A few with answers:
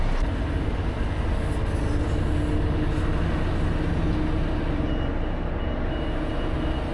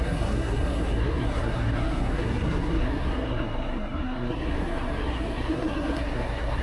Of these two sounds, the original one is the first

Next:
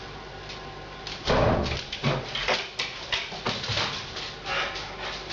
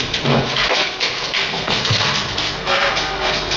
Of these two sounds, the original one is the first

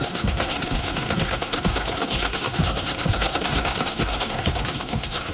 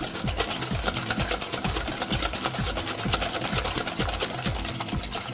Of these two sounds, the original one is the second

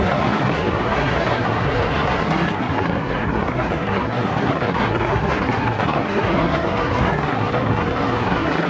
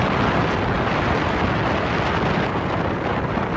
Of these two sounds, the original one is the second